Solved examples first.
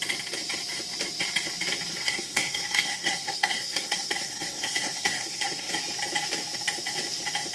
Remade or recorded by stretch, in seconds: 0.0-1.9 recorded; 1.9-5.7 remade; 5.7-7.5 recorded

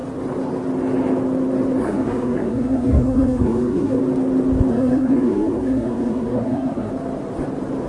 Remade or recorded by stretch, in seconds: 0.0-1.8 recorded; 1.8-4.0 remade; 4.0-4.7 recorded; 4.7-6.9 remade; 6.9-7.9 recorded

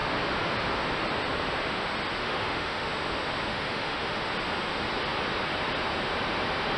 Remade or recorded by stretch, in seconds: 0.0-2.2 recorded; 2.2-2.9 remade; 2.9-3.5 recorded; 3.5-4.3 remade; 4.3-6.8 recorded

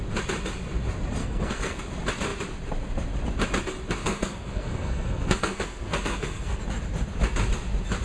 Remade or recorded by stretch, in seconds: 0.0-1.2 recorded; 1.2-1.8 remade; 1.8-4.0 recorded; 4.0-6.6 remade; 6.6-8.0 recorded

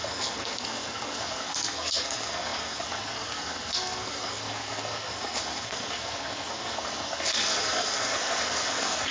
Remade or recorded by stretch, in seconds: 0.0-9.1 remade